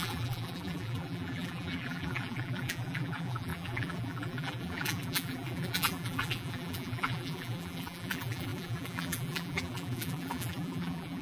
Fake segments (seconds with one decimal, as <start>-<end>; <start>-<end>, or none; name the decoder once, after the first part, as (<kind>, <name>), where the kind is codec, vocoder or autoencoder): 0.0-11.2 (vocoder, BigVGAN v2)